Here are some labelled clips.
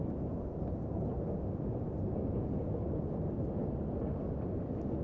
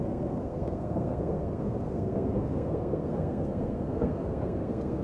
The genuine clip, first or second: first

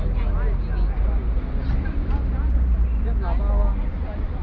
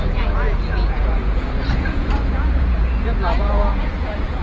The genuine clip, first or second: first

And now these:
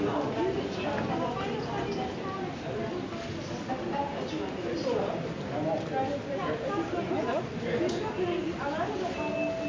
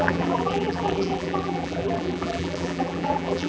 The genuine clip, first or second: first